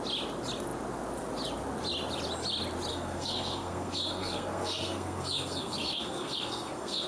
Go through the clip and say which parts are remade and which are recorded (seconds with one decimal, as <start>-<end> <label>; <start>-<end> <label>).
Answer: 0.0-2.9 recorded; 2.9-7.1 remade